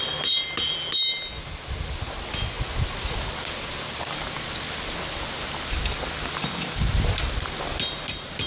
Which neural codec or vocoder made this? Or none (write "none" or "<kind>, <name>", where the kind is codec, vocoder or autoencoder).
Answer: none